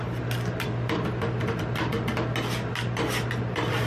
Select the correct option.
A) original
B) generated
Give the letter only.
A